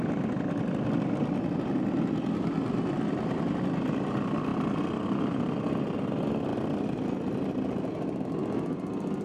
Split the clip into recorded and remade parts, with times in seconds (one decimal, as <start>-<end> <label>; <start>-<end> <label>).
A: 0.0-9.2 recorded